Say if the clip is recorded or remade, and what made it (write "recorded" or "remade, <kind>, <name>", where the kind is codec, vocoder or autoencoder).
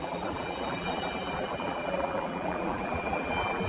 remade, vocoder, BigVGAN v2